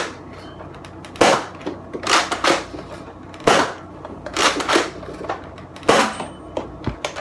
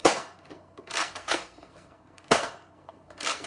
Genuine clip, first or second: first